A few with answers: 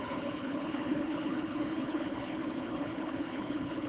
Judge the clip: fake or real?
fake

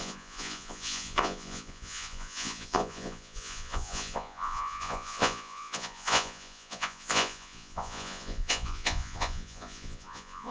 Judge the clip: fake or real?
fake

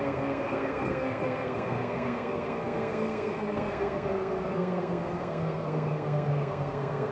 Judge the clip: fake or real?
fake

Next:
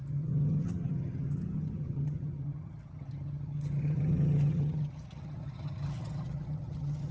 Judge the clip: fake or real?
fake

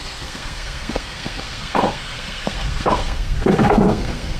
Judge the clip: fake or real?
fake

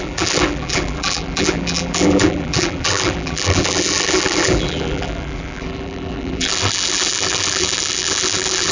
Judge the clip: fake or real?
fake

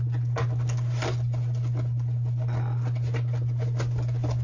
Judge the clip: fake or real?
real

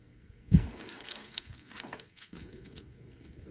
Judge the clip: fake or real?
fake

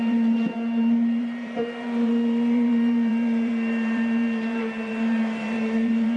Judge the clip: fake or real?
fake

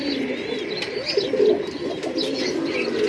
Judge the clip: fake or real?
real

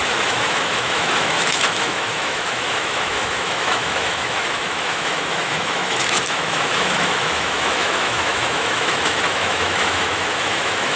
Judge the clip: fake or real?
fake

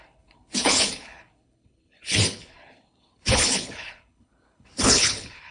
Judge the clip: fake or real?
fake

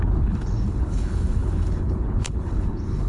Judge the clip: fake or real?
fake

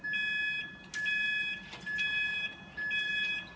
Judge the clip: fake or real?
real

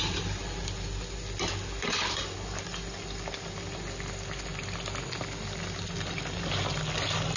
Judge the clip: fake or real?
real